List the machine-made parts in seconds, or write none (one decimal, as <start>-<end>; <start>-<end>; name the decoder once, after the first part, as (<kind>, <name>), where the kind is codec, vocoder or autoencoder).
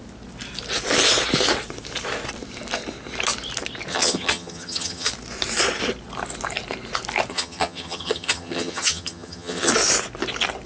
3.9-5.1 (vocoder, HiFi-GAN); 7.3-9.7